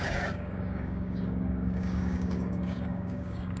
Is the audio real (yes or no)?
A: no